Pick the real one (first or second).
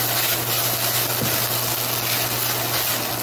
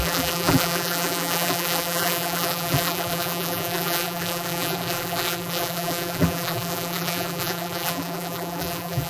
first